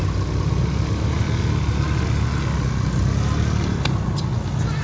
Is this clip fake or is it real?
real